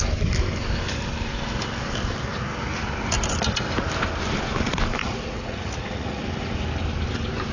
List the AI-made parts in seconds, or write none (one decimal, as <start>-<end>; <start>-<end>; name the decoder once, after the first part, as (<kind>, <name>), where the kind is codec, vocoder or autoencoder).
5.0-6.2 (vocoder, Vocos)

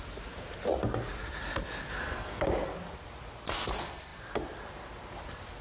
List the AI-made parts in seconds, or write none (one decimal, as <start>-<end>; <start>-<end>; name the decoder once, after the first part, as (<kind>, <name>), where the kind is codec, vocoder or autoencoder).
1.9-2.4 (codec, SNAC)

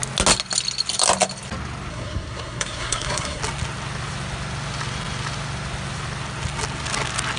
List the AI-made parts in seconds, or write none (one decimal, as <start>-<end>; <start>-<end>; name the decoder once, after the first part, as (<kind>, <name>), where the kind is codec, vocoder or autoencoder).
1.9-3.4 (codec, SNAC)

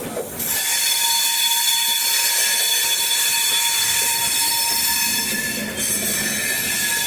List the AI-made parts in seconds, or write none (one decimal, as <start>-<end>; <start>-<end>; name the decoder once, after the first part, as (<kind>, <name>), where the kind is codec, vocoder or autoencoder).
2.7-3.5 (vocoder, BigVGAN v2); 4.0-4.5

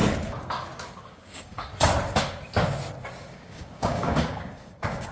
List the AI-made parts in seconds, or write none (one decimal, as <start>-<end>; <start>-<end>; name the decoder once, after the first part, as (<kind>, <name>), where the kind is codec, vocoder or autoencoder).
1.0-1.7 (codec, DAC); 3.2-5.1

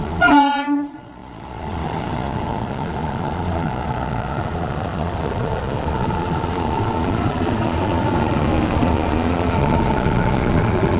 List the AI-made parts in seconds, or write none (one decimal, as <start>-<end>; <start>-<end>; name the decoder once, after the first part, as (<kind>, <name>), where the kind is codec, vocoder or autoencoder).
0.0-11.0 (vocoder, Vocos)